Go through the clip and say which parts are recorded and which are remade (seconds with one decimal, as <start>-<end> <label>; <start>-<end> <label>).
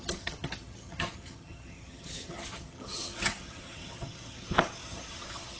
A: 0.0-5.6 remade